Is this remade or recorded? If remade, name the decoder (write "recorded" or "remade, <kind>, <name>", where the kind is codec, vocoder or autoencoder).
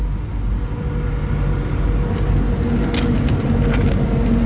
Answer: recorded